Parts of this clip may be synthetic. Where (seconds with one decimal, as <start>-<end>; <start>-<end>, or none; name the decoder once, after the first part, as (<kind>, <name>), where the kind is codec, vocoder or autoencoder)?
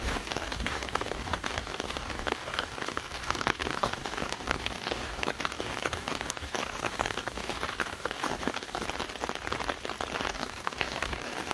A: 0.0-8.8 (codec, DAC); 10.3-11.5